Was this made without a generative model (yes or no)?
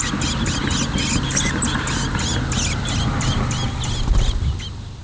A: yes